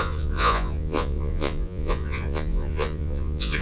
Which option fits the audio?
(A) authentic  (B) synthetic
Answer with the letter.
B